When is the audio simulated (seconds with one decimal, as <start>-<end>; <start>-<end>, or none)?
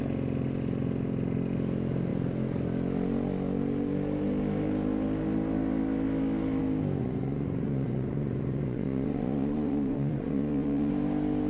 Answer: 7.0-10.9